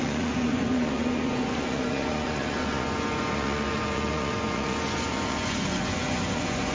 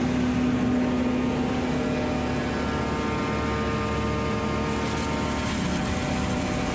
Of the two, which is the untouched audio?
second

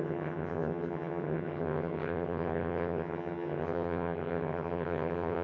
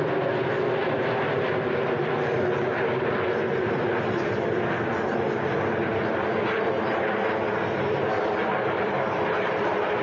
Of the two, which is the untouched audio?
second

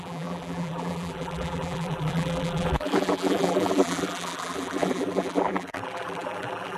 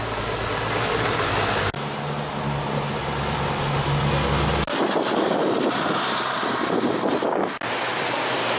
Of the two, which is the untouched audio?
second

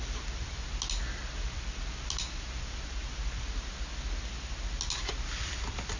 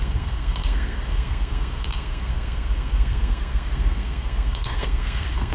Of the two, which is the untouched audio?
first